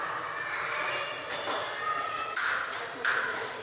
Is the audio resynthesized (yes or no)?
no